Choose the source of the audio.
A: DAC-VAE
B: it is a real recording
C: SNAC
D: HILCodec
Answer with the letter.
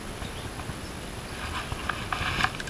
B